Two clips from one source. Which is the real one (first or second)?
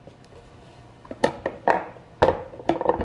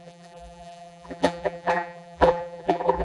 first